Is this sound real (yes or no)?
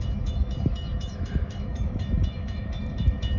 no